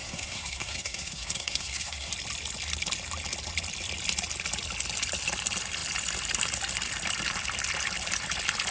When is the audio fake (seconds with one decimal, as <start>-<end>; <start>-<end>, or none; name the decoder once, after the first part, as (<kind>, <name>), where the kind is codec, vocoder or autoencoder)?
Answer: 0.0-2.1 (codec, SNAC)